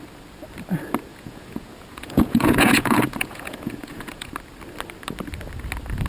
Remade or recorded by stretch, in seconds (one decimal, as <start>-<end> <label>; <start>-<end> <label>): 0.0-1.1 recorded; 1.1-4.3 remade; 4.3-6.1 recorded